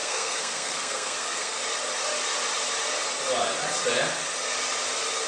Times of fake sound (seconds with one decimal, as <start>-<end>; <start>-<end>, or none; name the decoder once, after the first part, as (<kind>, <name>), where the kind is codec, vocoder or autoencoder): 0.0-1.6 (codec, SNAC)